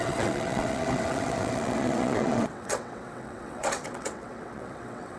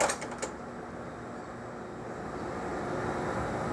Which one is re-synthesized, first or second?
first